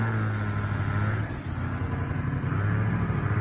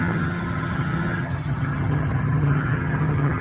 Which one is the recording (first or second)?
first